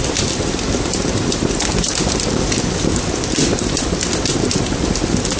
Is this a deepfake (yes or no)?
no